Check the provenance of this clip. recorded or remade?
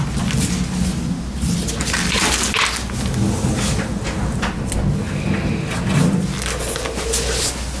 recorded